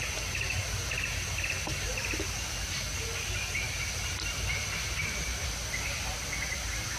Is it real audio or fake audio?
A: fake